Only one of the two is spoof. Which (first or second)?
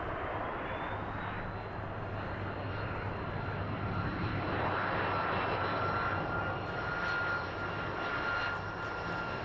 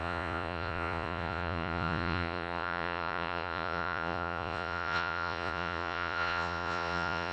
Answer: second